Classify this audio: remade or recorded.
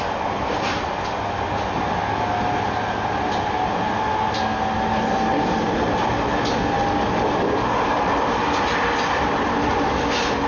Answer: recorded